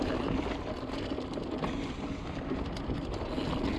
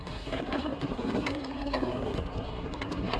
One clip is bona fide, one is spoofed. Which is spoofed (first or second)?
second